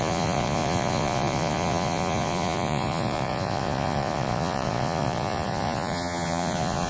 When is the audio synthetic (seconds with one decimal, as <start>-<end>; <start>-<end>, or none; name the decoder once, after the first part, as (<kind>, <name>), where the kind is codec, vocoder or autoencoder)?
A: 0.0-6.9 (vocoder, Vocos)